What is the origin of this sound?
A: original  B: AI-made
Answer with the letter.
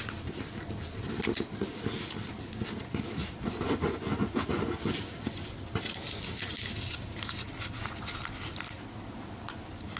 A